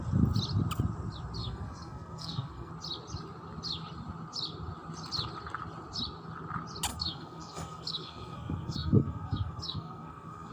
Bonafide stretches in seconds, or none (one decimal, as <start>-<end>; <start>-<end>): 0.0-1.4; 2.7-6.9